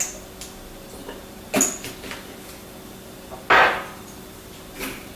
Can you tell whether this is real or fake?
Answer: real